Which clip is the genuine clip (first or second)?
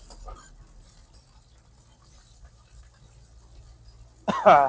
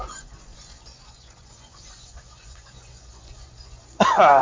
first